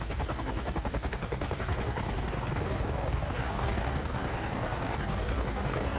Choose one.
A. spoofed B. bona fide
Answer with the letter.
A